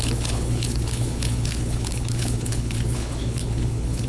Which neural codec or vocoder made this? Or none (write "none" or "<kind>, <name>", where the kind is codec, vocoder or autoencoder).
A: codec, HILCodec